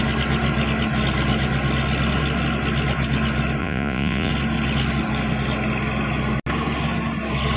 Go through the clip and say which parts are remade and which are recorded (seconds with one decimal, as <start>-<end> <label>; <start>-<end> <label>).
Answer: 0.0-3.6 recorded; 3.6-4.3 remade; 4.3-7.6 recorded